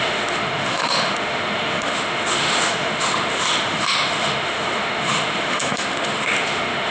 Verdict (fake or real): fake